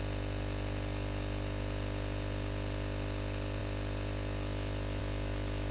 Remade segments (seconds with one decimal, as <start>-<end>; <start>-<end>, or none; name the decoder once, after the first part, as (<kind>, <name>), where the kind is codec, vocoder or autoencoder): none